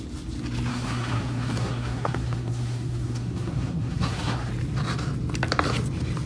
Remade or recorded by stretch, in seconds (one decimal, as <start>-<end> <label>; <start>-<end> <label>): 0.0-0.7 recorded; 0.7-4.5 remade; 4.5-6.3 recorded